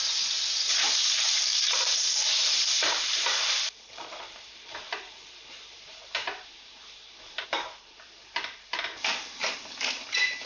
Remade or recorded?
remade